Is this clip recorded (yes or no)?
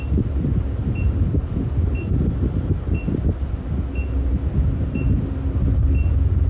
yes